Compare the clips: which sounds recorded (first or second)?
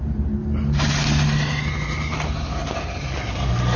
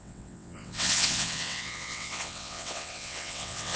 first